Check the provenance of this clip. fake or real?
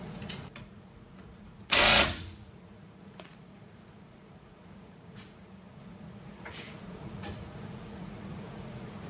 fake